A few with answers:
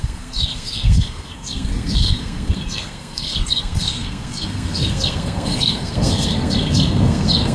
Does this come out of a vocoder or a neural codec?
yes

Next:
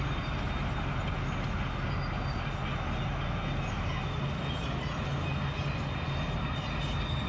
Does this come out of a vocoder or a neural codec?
no